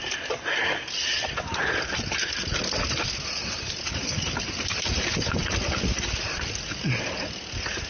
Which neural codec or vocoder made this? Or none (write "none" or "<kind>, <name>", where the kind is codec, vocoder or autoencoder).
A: none